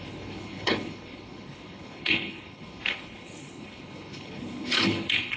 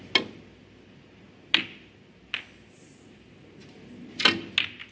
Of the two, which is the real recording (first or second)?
second